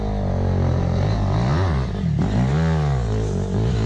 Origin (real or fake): real